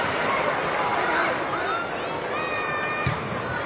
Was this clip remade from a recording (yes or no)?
no